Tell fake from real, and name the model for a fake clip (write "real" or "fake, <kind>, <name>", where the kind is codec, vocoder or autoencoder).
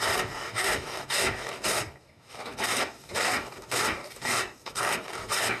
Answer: fake, codec, DAC